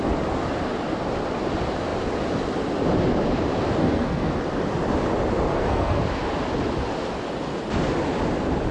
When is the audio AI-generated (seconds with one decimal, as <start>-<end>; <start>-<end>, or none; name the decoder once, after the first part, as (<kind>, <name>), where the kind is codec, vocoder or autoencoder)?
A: 3.8-4.3 (codec, SNAC); 5.5-6.0